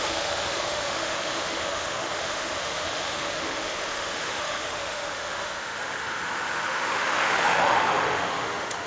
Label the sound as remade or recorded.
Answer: remade